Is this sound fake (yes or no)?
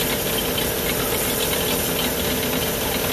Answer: no